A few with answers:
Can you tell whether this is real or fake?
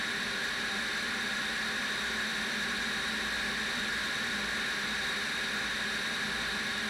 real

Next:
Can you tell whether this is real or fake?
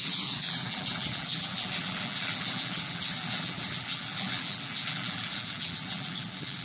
fake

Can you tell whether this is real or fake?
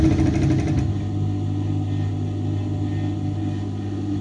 real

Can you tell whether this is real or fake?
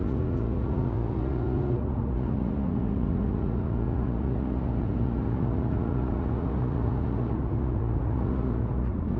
fake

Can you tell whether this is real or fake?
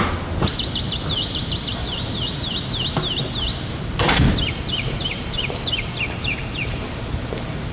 fake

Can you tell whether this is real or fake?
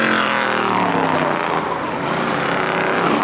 real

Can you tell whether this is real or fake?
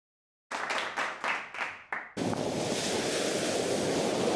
real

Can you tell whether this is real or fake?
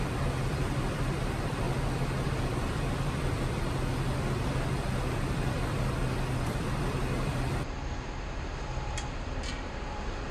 fake